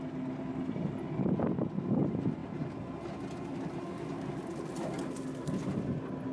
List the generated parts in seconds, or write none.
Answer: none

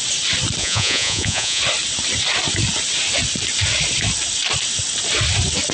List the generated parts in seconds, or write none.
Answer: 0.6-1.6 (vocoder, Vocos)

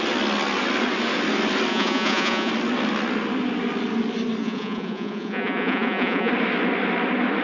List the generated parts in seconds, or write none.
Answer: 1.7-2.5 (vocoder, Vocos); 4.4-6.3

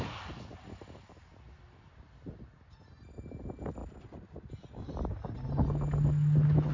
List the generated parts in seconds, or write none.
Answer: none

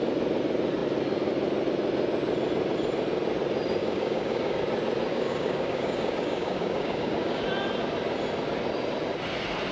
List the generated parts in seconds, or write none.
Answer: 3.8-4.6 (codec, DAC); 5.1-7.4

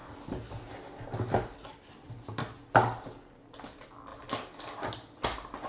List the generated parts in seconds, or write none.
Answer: none

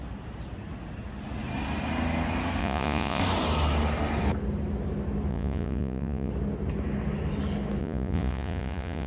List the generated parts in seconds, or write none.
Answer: 2.6-3.2 (vocoder, Vocos); 5.3-6.3; 7.8-9.1